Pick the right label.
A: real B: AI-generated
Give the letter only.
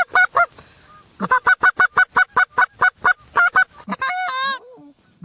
A